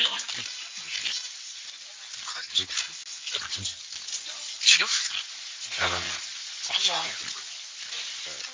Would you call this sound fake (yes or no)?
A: no